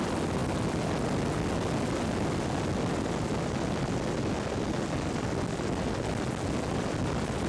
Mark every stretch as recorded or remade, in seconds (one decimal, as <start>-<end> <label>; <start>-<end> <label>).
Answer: 0.0-7.5 recorded